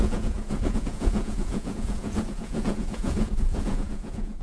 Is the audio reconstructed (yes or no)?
yes